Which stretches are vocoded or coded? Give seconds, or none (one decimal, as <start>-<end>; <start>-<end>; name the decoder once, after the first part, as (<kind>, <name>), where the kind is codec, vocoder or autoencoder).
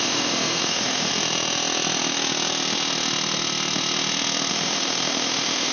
0.0-1.1 (autoencoder, DAC-VAE); 4.5-5.7